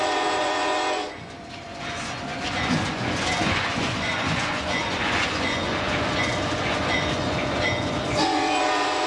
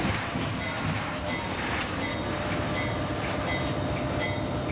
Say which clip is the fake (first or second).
first